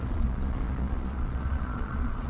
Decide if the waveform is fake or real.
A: fake